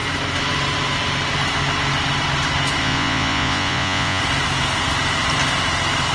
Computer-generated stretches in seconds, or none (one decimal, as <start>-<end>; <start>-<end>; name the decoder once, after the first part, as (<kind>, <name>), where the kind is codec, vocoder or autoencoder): 2.8-4.2 (vocoder, Vocos)